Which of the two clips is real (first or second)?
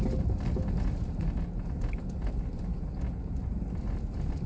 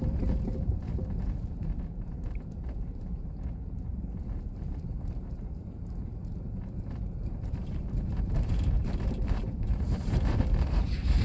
first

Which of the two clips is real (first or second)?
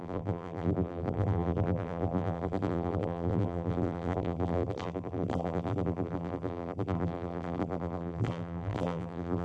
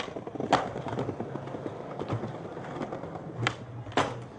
second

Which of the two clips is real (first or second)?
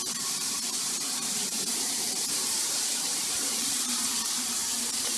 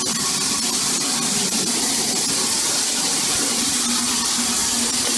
second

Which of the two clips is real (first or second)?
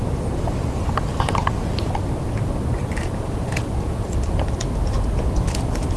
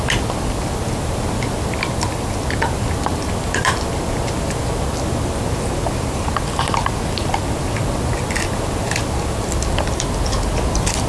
second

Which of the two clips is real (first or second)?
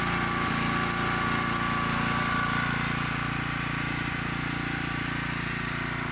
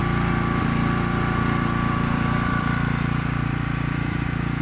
first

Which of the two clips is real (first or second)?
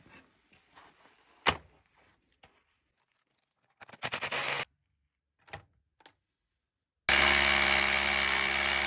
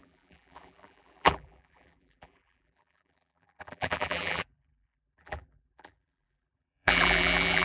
first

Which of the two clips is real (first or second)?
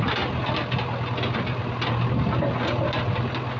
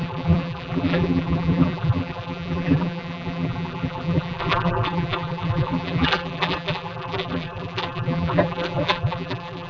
first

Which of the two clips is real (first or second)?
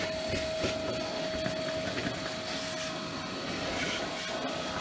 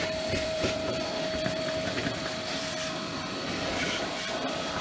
first